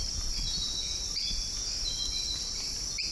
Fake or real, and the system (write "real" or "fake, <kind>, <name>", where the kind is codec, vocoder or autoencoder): real